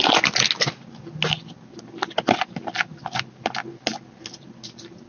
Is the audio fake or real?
real